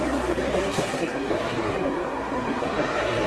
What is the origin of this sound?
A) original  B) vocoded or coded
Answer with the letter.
B